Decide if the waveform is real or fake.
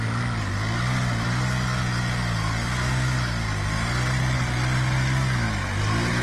real